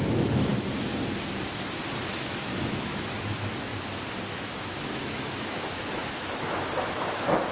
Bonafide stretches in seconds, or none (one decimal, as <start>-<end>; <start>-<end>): 0.5-2.1; 3.7-4.3